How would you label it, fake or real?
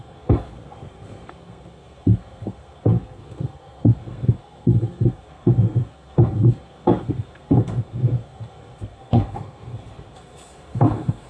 fake